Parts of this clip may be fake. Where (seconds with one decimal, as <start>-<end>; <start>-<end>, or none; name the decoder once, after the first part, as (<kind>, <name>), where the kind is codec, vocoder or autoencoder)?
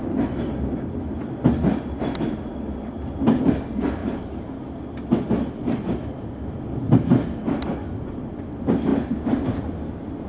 8.9-10.3 (vocoder, BigVGAN v2)